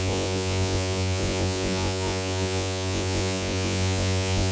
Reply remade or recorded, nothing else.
remade